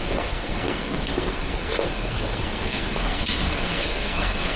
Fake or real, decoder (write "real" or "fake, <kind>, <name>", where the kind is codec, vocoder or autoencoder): fake, codec, SNAC